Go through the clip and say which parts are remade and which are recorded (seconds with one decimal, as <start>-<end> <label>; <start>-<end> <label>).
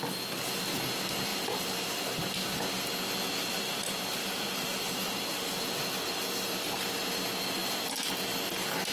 0.0-1.3 recorded; 1.3-2.3 remade; 2.3-3.4 recorded; 3.4-6.0 remade; 6.0-8.9 recorded